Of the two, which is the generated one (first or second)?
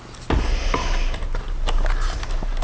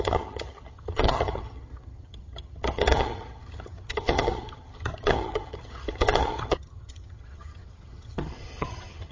second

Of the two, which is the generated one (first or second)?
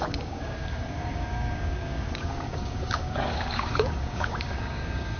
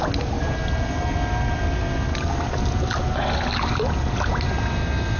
first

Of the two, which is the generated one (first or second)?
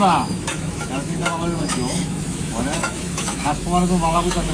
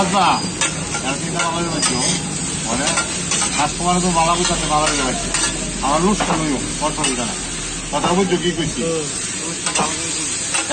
first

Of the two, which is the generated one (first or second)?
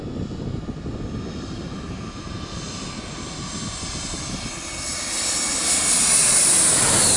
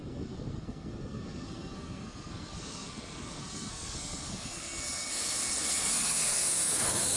second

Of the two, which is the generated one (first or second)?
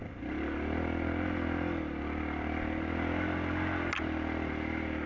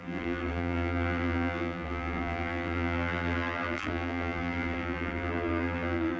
second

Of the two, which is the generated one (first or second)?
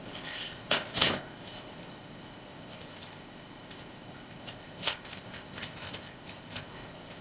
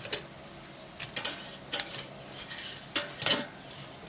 first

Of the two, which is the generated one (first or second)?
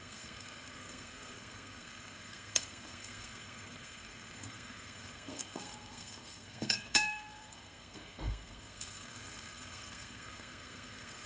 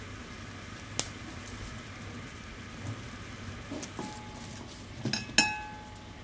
first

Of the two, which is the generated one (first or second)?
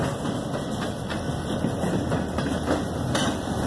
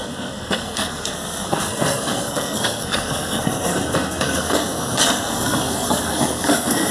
second